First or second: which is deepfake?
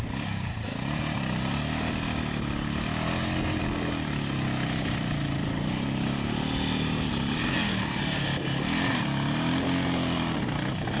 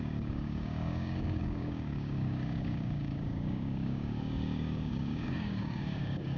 second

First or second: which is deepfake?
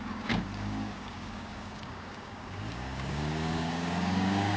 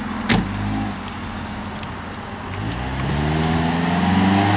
first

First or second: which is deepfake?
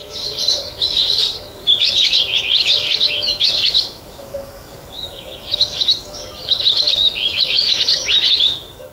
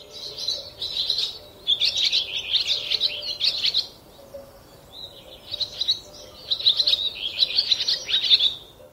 first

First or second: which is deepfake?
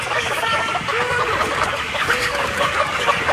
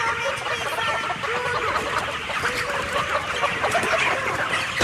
first